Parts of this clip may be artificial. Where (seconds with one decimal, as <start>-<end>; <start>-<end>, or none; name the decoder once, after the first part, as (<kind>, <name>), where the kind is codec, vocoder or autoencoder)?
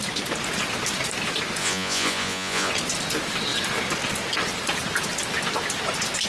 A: 1.6-2.7 (vocoder, Vocos)